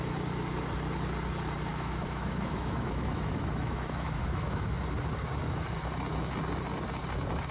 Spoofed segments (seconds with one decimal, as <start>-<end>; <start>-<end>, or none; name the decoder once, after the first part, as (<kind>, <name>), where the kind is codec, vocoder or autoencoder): 1.7-4.7 (autoencoder, DAC-VAE)